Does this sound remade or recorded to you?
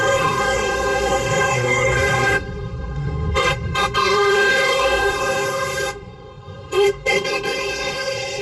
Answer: remade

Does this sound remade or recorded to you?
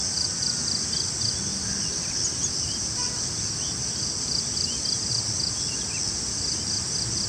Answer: recorded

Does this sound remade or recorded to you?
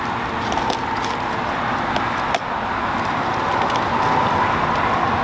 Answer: recorded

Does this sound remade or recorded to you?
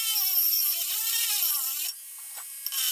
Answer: remade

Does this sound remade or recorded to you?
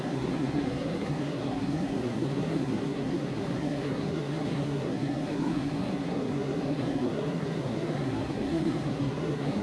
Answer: remade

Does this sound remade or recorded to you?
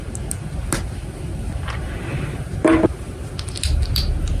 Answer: recorded